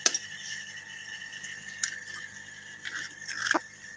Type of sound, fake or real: real